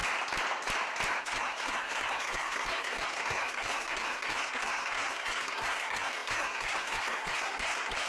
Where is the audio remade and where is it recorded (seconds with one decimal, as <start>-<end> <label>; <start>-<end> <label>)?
0.0-1.2 recorded; 1.2-8.1 remade